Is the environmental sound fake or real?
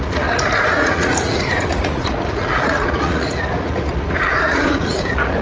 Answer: fake